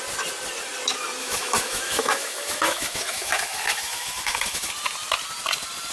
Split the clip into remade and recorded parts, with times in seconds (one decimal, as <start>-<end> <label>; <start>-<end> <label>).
0.0-1.2 recorded; 1.2-4.7 remade; 4.7-5.9 recorded